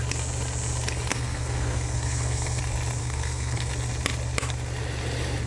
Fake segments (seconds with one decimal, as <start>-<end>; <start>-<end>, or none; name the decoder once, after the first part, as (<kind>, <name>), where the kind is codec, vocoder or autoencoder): 1.1-2.6 (codec, SNAC); 3.0-3.7